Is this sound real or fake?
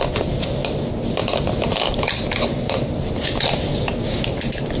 real